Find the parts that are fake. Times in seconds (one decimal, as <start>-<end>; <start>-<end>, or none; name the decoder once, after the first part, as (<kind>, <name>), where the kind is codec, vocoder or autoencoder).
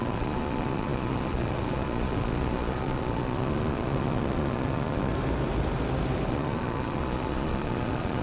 0.0-5.1 (vocoder, Vocos); 6.3-8.2